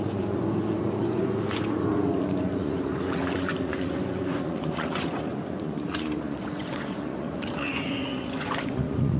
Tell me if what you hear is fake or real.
fake